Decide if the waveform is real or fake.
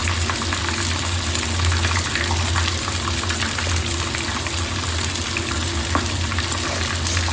real